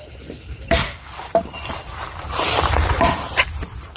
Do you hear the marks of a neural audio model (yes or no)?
yes